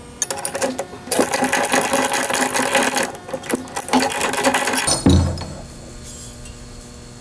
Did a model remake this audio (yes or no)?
no